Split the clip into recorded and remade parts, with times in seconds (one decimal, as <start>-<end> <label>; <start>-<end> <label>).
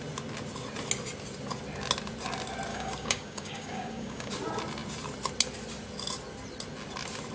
0.0-2.7 recorded; 2.7-4.3 remade; 4.3-7.3 recorded